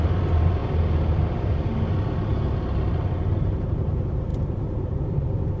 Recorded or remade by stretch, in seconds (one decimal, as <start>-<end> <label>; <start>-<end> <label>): 0.0-0.6 remade; 0.6-3.4 recorded; 3.4-5.6 remade